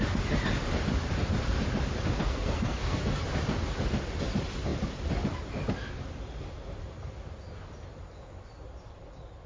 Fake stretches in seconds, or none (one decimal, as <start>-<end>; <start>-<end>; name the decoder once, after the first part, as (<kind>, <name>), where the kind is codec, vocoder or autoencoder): 2.2-3.0 (codec, SNAC)